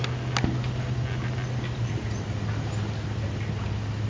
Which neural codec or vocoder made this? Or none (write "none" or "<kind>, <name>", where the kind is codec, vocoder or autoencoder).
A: none